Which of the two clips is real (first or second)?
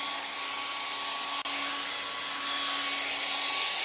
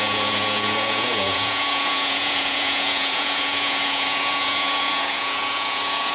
first